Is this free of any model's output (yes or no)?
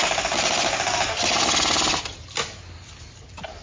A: yes